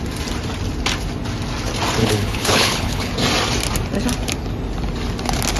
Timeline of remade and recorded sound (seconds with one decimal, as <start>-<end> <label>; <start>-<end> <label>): 0.0-2.0 recorded; 2.0-3.1 remade; 3.1-5.6 recorded